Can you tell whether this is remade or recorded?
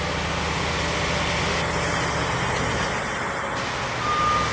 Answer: recorded